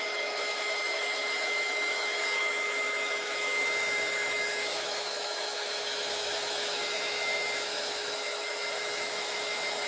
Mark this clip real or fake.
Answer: fake